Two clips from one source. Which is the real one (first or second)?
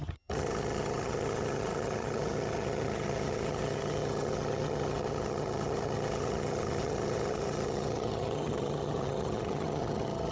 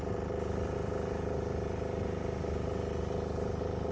second